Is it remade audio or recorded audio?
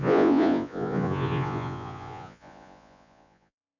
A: remade